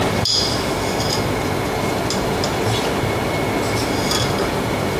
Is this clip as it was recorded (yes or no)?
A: yes